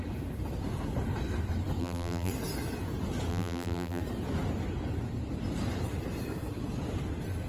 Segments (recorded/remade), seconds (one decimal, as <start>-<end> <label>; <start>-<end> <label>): 0.0-1.8 recorded; 1.8-2.3 remade; 2.3-3.3 recorded; 3.3-4.0 remade; 4.0-7.5 recorded